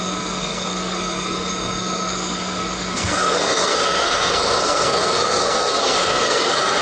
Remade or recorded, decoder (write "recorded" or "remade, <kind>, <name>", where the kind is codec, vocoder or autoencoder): remade, codec, SNAC